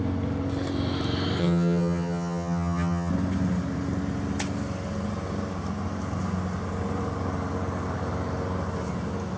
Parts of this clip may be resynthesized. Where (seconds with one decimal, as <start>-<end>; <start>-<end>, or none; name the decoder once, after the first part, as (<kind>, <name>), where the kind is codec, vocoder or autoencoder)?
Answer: 1.4-3.1 (vocoder, HiFi-GAN)